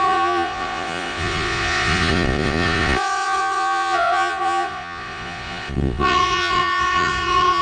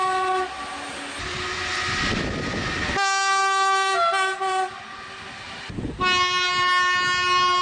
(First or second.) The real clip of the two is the second